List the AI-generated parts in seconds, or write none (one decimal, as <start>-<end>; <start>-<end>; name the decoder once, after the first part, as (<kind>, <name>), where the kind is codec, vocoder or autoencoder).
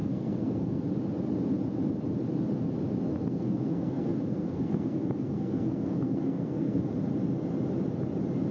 0.0-0.8 (codec, SNAC); 3.2-6.8